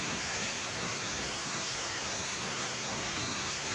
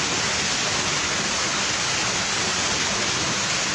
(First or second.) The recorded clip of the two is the second